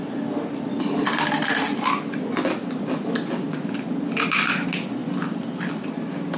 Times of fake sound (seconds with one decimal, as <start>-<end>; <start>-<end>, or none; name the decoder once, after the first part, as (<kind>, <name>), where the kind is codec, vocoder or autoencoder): none